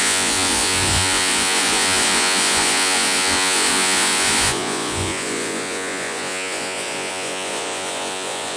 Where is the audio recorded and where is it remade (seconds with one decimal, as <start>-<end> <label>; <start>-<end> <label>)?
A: 0.0-8.6 remade